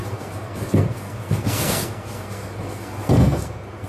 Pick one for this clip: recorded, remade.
remade